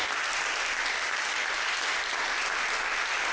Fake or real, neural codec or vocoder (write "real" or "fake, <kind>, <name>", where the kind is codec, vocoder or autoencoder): real